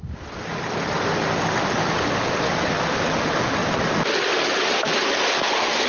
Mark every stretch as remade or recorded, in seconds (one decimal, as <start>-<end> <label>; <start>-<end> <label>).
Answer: 0.0-5.9 recorded